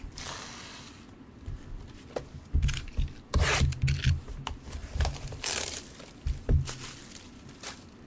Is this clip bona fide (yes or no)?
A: yes